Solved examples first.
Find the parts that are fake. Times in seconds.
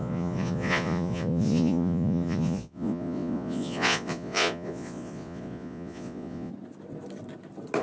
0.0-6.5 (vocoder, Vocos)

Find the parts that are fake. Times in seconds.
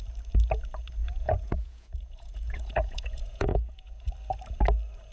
1.0-4.1 (vocoder, Vocos)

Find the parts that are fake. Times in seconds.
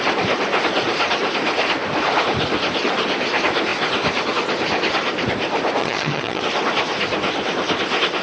5.8-6.4 (vocoder, HiFi-GAN)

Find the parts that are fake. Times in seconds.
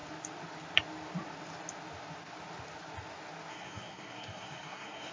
3.5-5.1 (codec, SNAC)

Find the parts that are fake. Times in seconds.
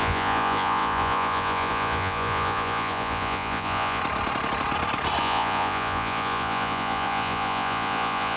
0.0-4.0 (vocoder, Vocos); 5.2-8.4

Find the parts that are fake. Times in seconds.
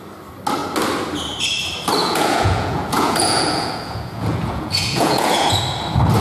2.0-5.6 (vocoder, Vocos)